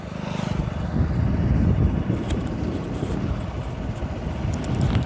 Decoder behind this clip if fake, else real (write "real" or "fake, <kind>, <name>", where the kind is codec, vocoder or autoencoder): real